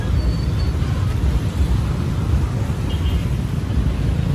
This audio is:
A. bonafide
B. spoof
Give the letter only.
A